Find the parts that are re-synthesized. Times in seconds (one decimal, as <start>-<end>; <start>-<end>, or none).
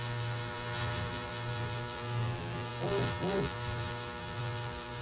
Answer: 0.0-5.0